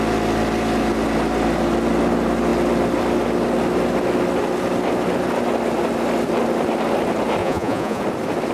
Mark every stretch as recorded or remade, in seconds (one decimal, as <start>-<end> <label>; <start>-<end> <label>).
0.0-7.4 recorded; 7.4-8.0 remade; 8.0-8.5 recorded